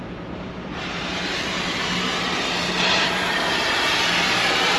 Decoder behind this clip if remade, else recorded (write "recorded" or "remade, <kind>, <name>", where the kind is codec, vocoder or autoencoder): remade, vocoder, BigVGAN v2